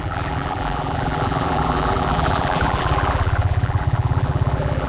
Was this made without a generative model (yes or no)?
no